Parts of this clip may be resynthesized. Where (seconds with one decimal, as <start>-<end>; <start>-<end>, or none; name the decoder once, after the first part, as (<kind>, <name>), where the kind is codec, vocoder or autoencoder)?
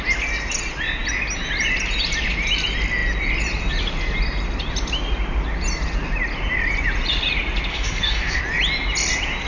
7.7-8.4 (codec, SNAC)